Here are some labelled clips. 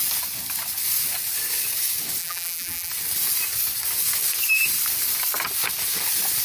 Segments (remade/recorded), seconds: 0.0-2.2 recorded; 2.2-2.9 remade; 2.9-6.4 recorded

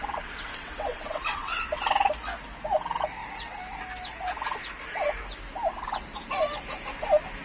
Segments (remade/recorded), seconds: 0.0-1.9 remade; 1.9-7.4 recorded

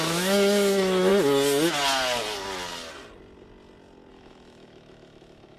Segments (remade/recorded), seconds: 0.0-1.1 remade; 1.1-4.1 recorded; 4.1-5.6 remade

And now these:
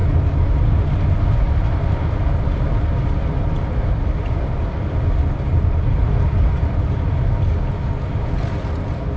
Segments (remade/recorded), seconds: 0.0-9.2 recorded

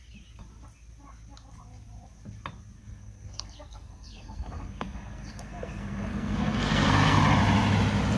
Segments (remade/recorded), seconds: 0.0-2.8 recorded; 2.8-7.2 remade; 7.2-8.2 recorded

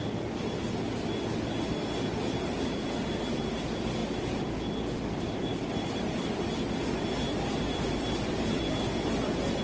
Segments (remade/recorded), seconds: 0.0-9.6 recorded

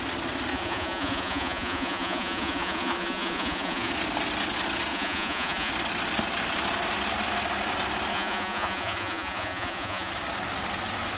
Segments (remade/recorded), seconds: 0.0-0.5 recorded; 0.5-3.9 remade; 3.9-4.9 recorded; 4.9-5.7 remade; 5.7-8.1 recorded; 8.1-10.1 remade; 10.1-11.2 recorded